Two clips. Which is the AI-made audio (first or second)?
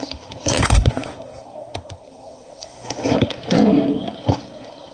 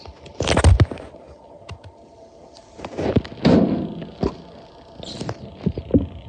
first